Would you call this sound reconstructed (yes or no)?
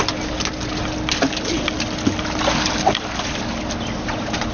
no